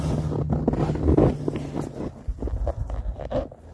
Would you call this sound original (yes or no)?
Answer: yes